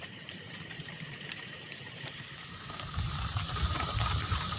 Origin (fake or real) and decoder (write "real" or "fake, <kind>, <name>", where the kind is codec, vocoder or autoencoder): fake, vocoder, BigVGAN v2